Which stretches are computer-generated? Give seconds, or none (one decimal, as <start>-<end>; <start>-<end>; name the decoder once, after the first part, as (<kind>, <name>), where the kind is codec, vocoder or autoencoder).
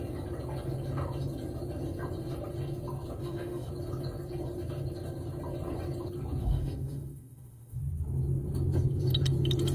3.2-3.7 (autoencoder, DAC-VAE); 6.4-7.8